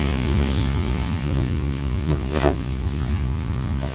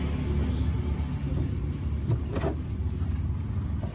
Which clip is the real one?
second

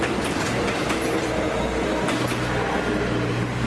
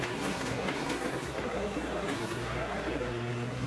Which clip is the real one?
first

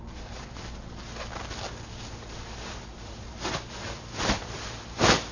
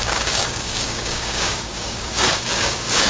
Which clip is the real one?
first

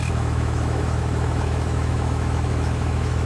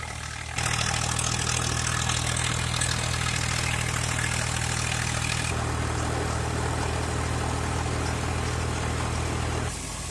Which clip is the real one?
second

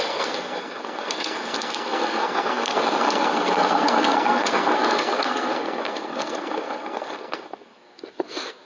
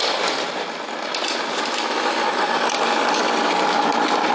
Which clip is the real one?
second